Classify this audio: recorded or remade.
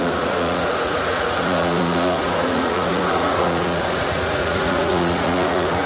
remade